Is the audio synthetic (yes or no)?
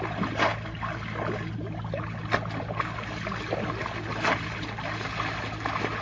no